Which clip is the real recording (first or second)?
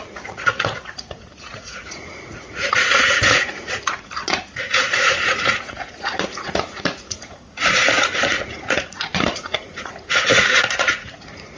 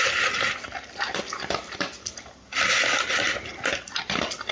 second